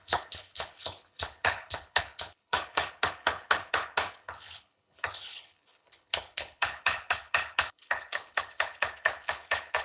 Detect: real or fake fake